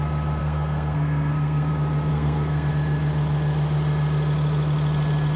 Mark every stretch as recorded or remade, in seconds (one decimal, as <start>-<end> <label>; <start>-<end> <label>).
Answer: 0.0-0.4 recorded; 0.4-1.7 remade; 1.7-2.1 recorded; 2.1-2.7 remade; 2.7-5.4 recorded